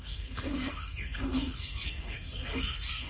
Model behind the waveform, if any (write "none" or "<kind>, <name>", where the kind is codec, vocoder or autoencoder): codec, SNAC